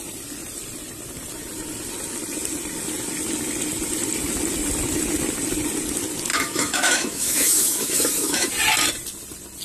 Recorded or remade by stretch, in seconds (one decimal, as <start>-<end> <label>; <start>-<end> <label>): 0.0-6.3 recorded; 6.3-8.5 remade; 8.5-9.6 recorded